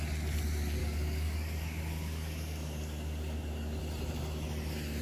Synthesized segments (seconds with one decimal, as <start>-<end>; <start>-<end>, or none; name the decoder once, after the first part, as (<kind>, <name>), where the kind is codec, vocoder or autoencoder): 0.8-3.8 (codec, DAC)